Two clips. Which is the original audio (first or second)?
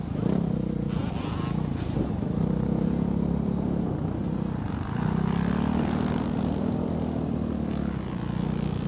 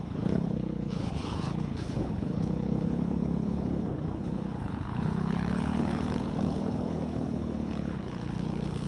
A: first